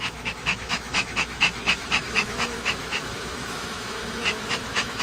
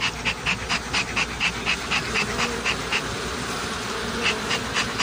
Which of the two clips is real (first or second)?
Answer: second